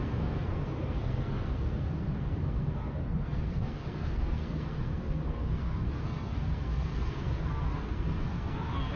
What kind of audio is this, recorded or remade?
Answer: remade